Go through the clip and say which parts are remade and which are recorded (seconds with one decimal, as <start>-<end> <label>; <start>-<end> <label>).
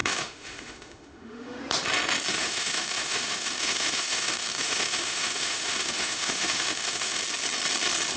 0.0-1.6 remade; 1.6-2.3 recorded; 2.3-7.2 remade; 7.2-8.2 recorded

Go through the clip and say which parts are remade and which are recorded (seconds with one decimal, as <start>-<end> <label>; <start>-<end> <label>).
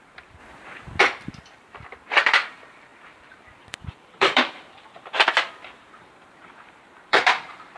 0.0-0.4 remade; 0.4-1.0 recorded; 1.0-7.8 remade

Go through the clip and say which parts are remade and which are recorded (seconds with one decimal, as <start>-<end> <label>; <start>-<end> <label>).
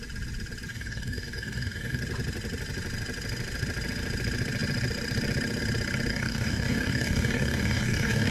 0.0-0.7 recorded; 0.7-2.0 remade; 2.0-6.1 recorded; 6.1-8.3 remade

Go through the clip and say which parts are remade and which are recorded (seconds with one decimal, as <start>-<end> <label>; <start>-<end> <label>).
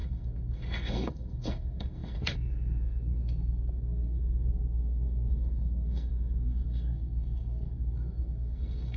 0.0-9.0 remade